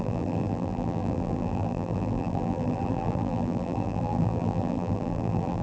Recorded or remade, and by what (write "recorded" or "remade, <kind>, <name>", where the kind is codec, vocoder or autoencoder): remade, vocoder, BigVGAN v2